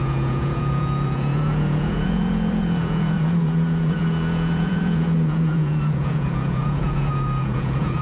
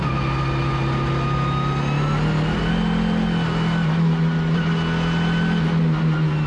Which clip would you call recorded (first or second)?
second